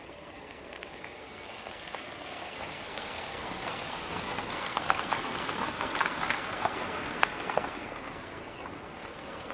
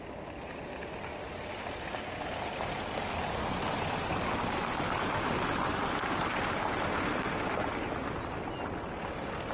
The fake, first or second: first